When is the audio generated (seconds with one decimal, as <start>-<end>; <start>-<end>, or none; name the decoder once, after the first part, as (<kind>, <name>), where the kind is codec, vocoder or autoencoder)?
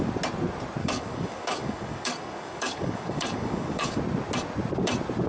0.8-4.0 (codec, DAC)